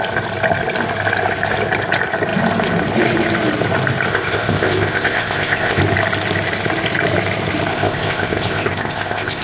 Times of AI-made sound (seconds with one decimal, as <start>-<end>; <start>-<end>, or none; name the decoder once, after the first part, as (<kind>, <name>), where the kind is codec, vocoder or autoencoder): 4.1-5.8 (codec, ZipCodec); 7.7-9.4